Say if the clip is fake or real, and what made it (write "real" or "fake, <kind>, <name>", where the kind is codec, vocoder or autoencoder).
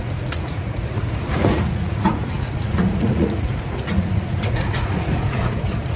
fake, vocoder, Vocos